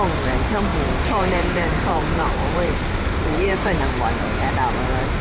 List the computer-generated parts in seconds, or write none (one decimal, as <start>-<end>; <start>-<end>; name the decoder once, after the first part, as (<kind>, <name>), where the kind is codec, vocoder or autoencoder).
0.7-3.8 (vocoder, BigVGAN v2)